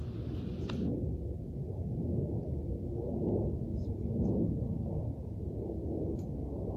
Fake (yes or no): no